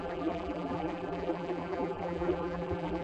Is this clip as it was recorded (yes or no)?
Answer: no